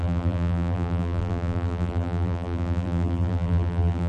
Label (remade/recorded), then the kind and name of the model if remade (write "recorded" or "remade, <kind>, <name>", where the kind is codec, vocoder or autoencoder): remade, vocoder, BigVGAN v2